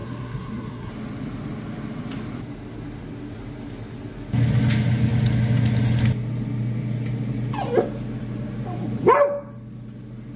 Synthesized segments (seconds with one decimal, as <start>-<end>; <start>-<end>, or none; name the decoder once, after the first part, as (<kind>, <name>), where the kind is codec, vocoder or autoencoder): 0.0-0.9 (codec, SNAC)